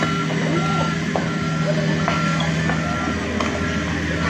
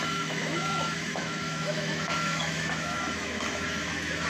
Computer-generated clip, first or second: second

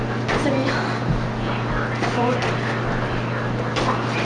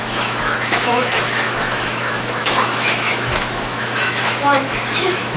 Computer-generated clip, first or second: second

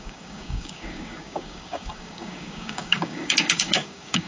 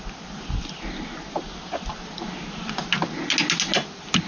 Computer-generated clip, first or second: first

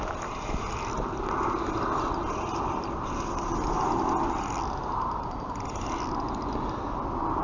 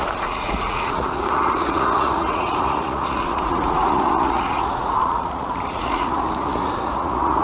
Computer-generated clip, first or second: second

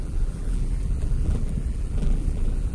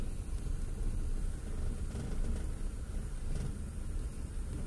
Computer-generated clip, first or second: first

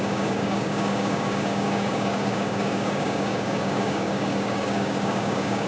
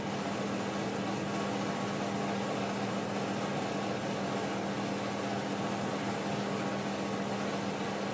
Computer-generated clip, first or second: first